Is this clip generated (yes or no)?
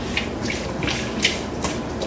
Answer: yes